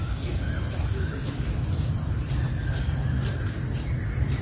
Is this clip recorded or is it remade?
recorded